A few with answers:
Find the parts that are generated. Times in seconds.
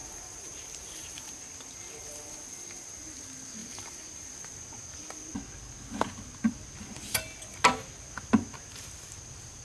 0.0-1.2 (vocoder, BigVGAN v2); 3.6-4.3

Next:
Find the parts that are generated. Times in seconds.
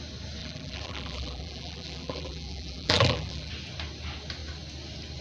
0.4-3.5 (vocoder, BigVGAN v2)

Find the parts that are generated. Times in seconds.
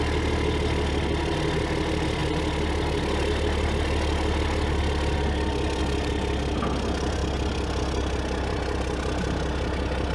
none